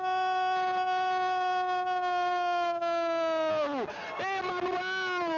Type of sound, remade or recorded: recorded